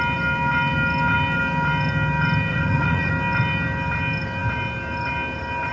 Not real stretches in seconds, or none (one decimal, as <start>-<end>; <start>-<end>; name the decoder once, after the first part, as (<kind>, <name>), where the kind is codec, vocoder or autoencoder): 2.5-3.1 (vocoder, Vocos)